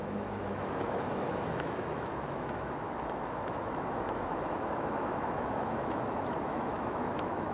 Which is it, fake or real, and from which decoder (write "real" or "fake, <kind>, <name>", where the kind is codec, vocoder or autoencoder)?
fake, autoencoder, DAC-VAE